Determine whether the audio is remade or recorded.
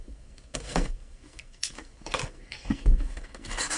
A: remade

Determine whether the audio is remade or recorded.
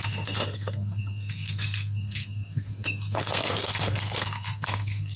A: remade